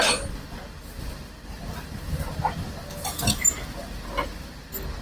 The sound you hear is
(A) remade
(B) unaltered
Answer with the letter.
B